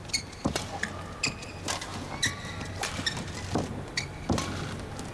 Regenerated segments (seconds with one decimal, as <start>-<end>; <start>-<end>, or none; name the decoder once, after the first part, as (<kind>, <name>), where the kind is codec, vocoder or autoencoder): 0.0-0.6 (vocoder, BigVGAN v2); 1.9-3.7